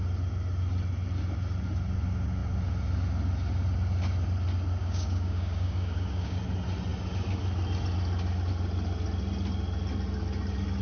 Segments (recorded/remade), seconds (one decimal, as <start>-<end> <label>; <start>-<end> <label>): 0.0-4.8 recorded; 4.8-6.4 remade; 6.4-10.8 recorded